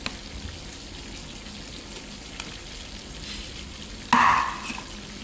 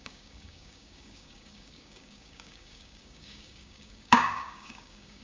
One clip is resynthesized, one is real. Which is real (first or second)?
first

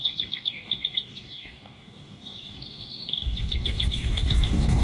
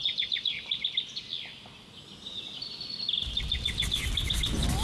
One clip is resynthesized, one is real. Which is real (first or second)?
second